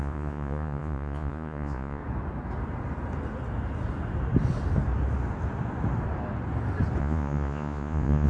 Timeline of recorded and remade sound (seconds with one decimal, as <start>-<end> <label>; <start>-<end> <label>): 0.0-2.0 remade; 2.0-7.0 recorded; 7.0-8.3 remade